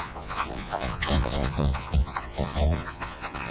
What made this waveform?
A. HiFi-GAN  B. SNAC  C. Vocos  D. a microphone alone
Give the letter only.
C